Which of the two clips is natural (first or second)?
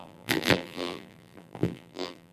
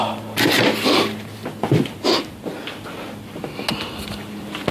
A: second